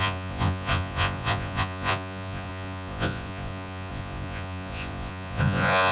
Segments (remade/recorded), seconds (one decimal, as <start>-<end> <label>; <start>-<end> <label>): 0.0-5.9 remade